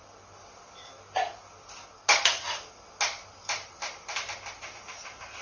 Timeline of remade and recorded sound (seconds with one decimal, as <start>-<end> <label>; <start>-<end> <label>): 0.0-5.4 recorded